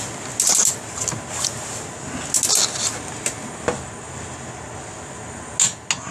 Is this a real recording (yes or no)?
yes